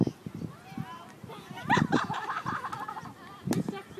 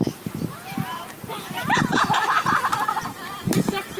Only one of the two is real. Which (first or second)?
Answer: first